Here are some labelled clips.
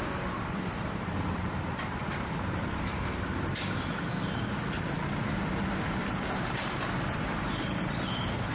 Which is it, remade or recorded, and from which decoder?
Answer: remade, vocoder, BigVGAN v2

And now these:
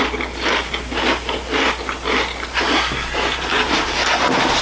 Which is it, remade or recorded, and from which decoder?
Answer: recorded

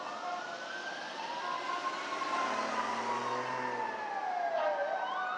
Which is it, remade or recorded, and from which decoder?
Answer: recorded